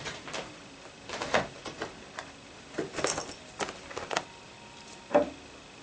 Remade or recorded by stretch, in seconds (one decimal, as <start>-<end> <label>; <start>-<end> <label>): 0.0-5.8 recorded